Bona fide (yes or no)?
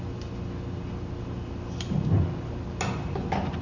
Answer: yes